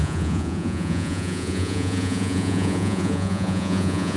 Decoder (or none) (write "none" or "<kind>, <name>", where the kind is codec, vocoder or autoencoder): vocoder, Vocos